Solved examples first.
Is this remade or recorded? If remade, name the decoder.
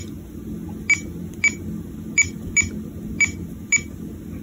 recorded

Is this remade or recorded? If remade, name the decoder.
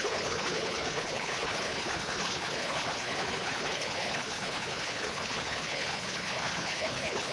remade, codec, HILCodec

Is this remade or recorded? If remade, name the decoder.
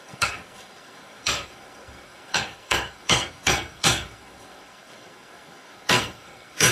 remade, codec, SNAC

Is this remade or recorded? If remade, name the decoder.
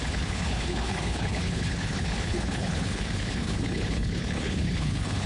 remade, codec, HILCodec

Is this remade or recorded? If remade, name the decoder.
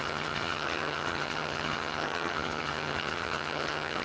remade, vocoder, HiFi-GAN